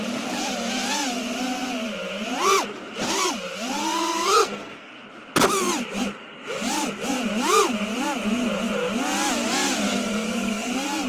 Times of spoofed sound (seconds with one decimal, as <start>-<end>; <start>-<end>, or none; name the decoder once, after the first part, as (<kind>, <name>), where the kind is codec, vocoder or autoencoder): 3.8-4.9 (codec, SNAC); 9.9-10.7